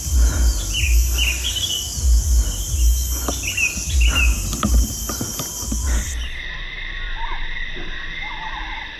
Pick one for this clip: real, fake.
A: real